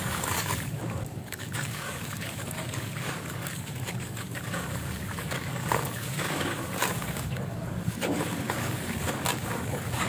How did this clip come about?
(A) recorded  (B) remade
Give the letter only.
B